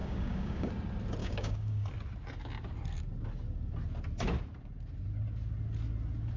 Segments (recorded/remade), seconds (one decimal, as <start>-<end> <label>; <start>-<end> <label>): 0.0-0.7 remade; 0.7-1.2 recorded; 1.2-1.9 remade; 1.9-6.4 recorded